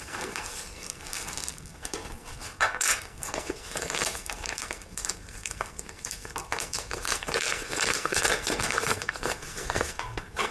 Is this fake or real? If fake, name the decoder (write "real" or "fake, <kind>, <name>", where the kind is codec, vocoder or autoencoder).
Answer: fake, codec, SNAC